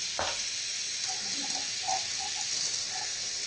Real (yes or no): yes